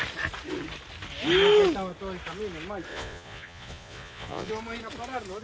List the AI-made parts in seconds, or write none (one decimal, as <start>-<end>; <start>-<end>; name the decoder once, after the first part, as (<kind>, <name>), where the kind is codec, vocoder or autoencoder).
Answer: 2.9-4.5 (vocoder, Vocos)